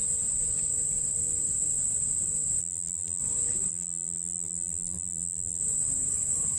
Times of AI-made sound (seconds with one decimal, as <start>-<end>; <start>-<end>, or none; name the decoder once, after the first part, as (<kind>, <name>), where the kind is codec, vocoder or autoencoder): 2.6-3.2 (vocoder, BigVGAN v2); 3.7-5.6